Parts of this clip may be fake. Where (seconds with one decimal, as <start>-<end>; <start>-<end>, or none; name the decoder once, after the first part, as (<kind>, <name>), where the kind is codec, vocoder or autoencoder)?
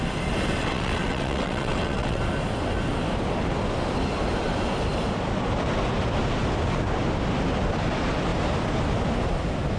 0.6-2.2 (vocoder, WaveNeXt)